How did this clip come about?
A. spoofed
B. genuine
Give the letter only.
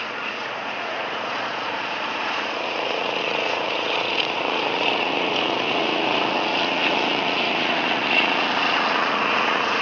A